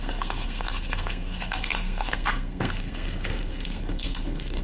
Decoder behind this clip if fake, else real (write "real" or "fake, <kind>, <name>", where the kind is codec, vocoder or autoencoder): fake, codec, SNAC